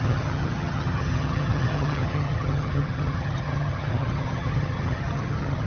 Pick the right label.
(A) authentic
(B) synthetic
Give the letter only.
B